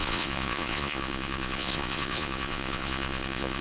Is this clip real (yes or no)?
no